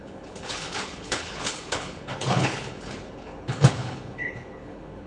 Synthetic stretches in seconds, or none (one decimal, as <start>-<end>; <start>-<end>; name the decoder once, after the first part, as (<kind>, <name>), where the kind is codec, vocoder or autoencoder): 0.0-5.1 (codec, HILCodec)